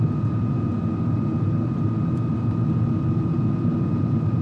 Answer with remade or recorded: recorded